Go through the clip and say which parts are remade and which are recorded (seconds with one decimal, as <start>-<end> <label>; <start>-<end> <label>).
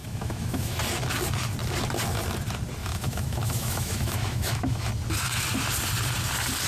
0.0-0.8 remade; 0.8-2.8 recorded; 2.8-4.9 remade; 4.9-6.7 recorded